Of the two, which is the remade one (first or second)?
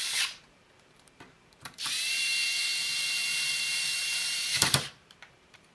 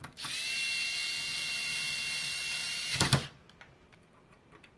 first